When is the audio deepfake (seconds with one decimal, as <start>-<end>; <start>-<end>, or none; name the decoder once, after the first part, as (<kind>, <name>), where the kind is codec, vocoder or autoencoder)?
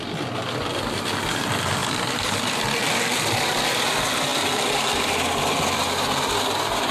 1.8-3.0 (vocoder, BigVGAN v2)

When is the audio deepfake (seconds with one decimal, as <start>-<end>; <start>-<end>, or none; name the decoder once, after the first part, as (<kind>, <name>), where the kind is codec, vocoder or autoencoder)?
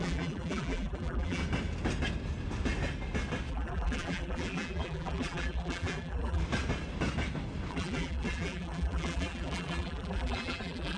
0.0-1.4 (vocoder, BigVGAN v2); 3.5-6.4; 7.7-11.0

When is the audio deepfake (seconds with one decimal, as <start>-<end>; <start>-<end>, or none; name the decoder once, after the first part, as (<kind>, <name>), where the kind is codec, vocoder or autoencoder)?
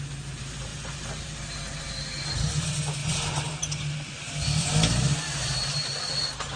0.7-1.9 (vocoder, BigVGAN v2)